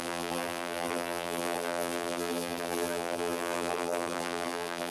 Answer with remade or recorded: remade